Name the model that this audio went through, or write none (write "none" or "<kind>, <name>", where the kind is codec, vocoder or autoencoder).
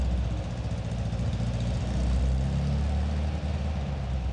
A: none